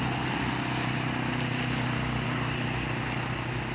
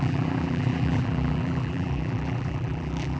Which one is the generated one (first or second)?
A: second